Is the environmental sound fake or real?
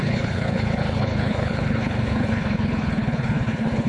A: fake